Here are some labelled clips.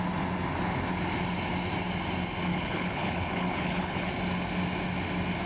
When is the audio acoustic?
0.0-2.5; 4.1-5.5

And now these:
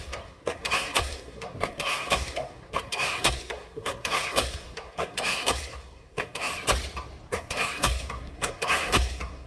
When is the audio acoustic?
6.5-7.3

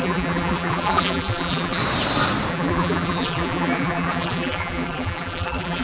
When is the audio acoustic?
1.8-2.5

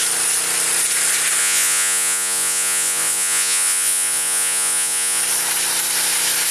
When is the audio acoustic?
0.0-1.4; 5.2-6.5

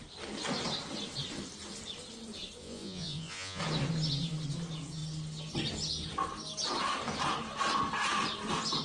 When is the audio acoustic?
0.0-2.6; 3.6-8.8

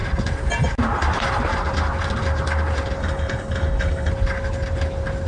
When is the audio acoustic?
0.0-3.0; 4.1-5.3